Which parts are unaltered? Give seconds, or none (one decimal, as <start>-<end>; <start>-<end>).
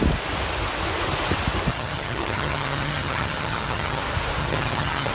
0.0-1.7; 4.0-4.4